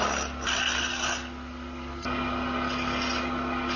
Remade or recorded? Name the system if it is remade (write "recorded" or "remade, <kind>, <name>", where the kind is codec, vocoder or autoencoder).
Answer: recorded